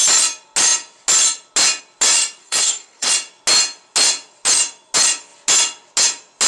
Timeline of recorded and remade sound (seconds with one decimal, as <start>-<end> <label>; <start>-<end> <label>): 0.0-2.4 recorded; 2.4-3.1 remade; 3.1-6.5 recorded